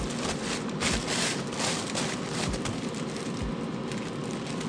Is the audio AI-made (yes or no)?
no